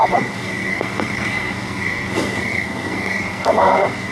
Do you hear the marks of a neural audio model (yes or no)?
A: yes